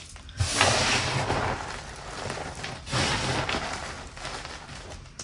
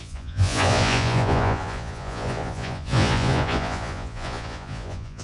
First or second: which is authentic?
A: first